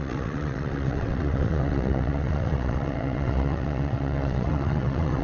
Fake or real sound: fake